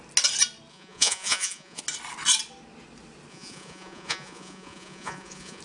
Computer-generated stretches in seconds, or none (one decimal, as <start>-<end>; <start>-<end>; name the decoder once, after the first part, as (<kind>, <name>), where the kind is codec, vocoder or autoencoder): 0.7-1.8 (vocoder, Vocos); 3.3-5.6